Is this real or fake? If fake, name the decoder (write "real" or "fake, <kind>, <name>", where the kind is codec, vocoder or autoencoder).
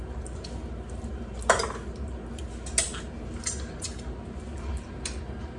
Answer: real